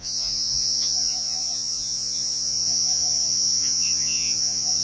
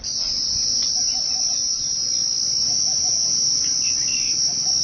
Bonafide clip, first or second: second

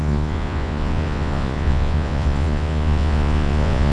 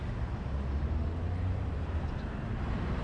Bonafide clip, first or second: second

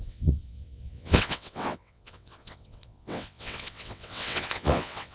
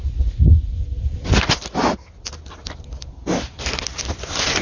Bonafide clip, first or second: second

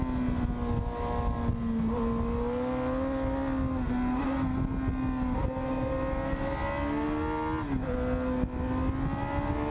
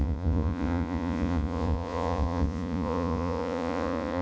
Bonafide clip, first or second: first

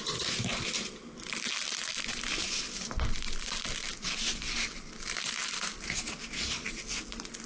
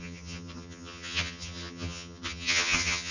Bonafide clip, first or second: first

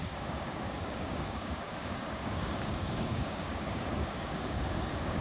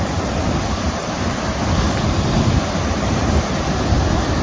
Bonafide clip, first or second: second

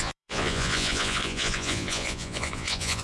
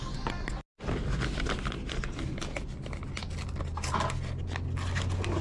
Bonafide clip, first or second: second